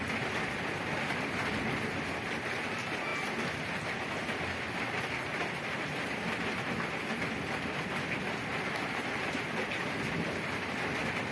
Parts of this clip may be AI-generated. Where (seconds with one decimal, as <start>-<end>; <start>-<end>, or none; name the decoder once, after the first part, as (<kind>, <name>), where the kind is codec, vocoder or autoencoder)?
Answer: none